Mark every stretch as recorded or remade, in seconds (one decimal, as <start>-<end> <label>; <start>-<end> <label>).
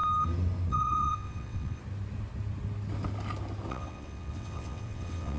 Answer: 0.0-0.7 recorded; 0.7-1.8 remade; 1.8-3.7 recorded; 3.7-5.4 remade